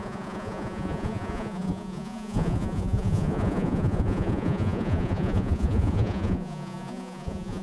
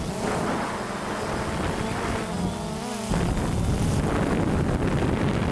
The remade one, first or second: first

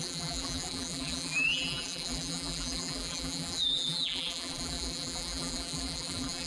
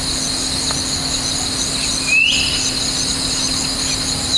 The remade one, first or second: first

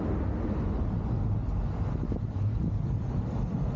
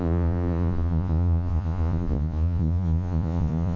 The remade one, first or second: second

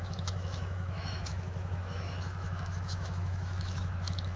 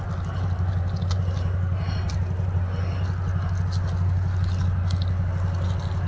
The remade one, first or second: first